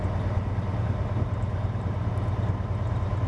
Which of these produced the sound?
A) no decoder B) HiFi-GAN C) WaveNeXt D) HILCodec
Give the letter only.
A